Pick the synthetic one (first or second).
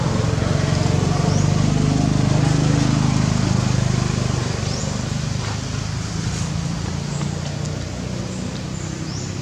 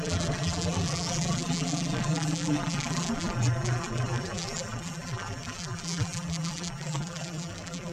second